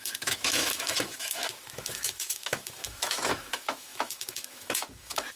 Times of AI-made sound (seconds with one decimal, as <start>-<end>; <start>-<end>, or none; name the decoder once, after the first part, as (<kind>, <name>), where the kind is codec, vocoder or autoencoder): 0.0-5.4 (autoencoder, DAC-VAE)

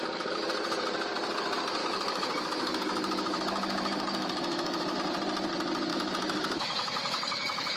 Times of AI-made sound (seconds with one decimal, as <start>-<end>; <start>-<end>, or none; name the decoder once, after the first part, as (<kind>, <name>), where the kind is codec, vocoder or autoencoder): 1.8-5.0 (autoencoder, DAC-VAE); 5.9-7.8

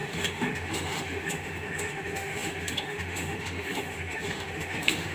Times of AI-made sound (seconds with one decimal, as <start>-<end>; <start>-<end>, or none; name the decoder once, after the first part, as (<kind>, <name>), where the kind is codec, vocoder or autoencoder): 0.0-5.1 (autoencoder, DAC-VAE)

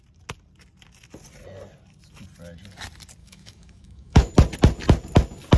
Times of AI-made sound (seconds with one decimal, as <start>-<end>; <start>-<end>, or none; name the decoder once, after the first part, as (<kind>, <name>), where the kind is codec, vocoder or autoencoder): 3.2-4.3 (autoencoder, DAC-VAE)

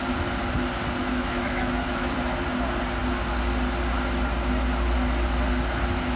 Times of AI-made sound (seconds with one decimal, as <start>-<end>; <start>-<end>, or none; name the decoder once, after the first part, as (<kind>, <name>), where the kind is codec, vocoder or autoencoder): 1.0-2.1 (autoencoder, DAC-VAE)

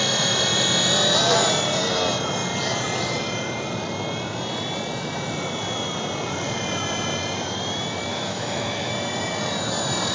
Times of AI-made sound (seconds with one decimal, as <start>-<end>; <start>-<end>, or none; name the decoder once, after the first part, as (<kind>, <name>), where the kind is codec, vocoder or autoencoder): 8.1-8.9 (autoencoder, DAC-VAE)

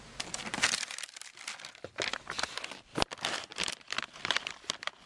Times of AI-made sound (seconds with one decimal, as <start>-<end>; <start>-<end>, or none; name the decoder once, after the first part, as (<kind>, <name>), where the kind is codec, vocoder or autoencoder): none